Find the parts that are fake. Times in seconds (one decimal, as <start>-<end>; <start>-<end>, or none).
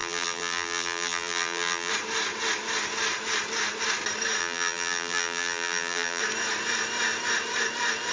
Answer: 0.0-1.9; 4.4-6.2